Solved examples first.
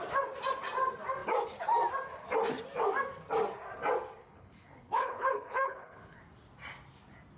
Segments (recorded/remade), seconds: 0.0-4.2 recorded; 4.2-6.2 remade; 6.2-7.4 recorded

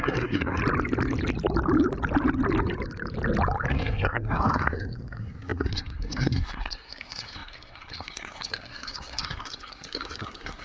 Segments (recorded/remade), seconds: 0.0-0.6 remade; 0.6-3.7 recorded; 3.7-10.6 remade

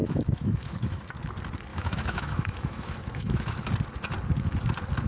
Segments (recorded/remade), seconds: 0.0-1.1 remade; 1.1-1.7 recorded; 1.7-3.7 remade; 3.7-5.1 recorded

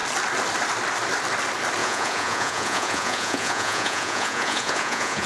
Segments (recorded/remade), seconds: 0.0-1.8 recorded; 1.8-5.3 remade

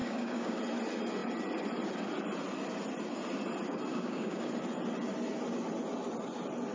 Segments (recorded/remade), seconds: 0.0-0.6 remade; 0.6-3.9 recorded; 3.9-4.5 remade; 4.5-6.7 recorded